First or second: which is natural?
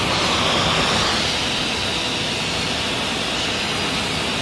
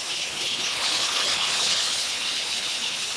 first